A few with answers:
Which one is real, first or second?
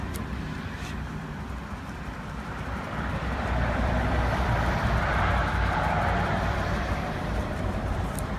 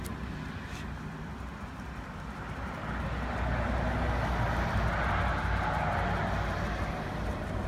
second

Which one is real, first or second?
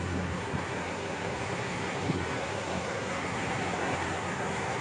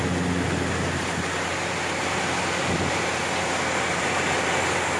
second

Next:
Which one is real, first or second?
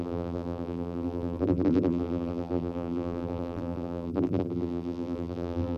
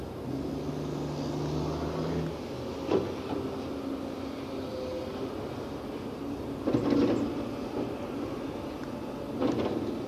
second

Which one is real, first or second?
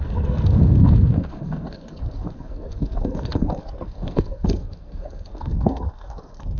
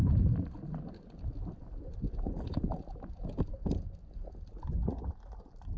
second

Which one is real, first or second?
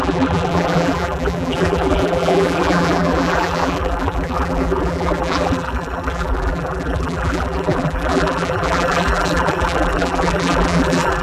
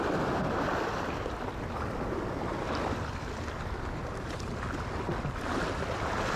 second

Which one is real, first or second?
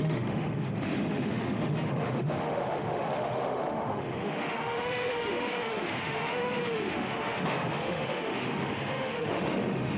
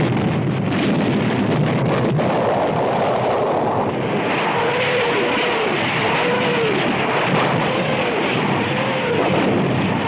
second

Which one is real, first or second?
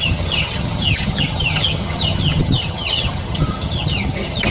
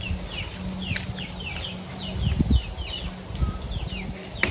second